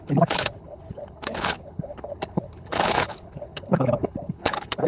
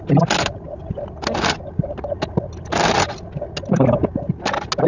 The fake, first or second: first